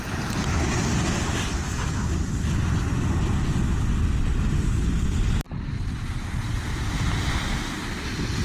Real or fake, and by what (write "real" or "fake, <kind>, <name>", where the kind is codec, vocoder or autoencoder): real